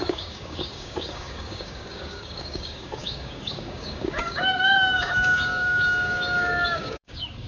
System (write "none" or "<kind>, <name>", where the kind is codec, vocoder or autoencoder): codec, DAC